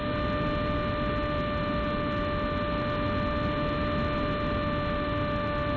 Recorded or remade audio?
recorded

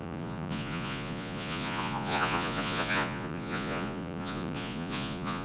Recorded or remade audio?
remade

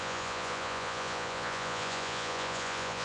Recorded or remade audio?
remade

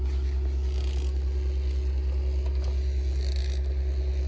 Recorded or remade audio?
recorded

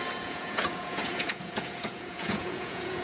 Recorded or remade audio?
remade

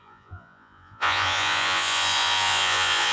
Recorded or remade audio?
remade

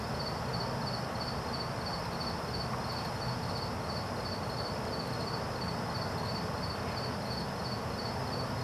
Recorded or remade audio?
recorded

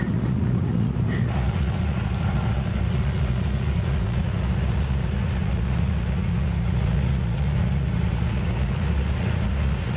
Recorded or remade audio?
remade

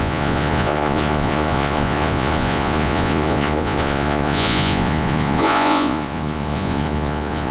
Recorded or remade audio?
remade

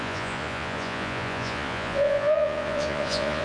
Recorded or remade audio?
remade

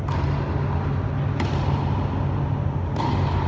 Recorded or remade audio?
recorded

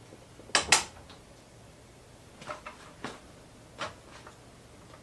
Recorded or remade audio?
recorded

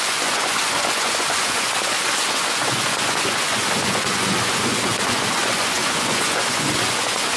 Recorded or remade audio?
remade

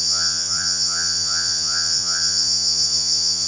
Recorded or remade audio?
remade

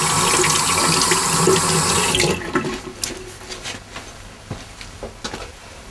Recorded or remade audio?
recorded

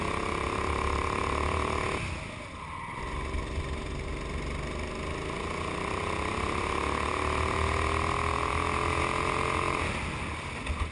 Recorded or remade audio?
recorded